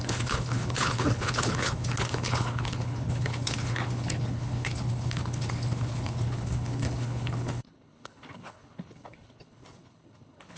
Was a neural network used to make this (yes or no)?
yes